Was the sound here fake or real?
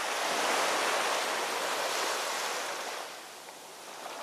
real